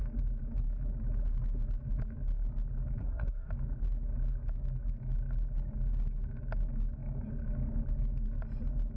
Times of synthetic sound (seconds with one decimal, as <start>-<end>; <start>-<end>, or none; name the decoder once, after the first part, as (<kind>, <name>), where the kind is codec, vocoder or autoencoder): 3.0-3.5 (codec, SNAC)